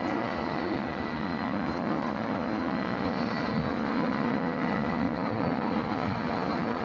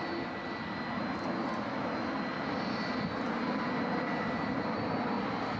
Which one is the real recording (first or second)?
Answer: second